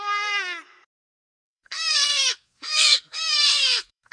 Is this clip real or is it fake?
fake